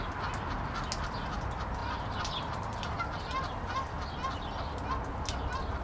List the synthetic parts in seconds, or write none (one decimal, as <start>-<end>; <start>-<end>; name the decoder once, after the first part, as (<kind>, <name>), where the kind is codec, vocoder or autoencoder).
1.8-3.0 (vocoder, BigVGAN v2)